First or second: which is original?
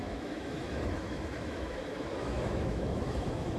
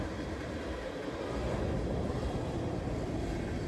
second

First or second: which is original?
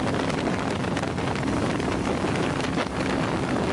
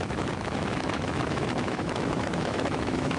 first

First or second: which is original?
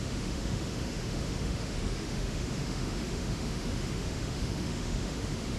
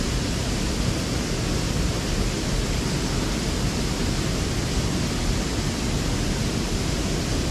second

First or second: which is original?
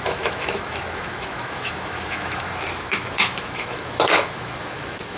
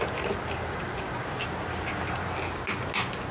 second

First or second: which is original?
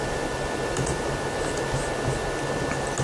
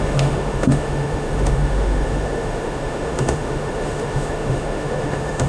first